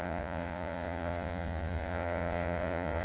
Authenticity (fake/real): fake